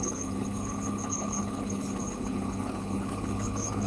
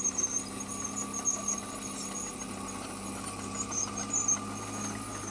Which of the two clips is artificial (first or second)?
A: first